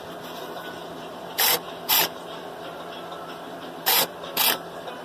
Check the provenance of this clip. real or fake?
fake